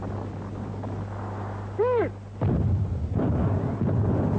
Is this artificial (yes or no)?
no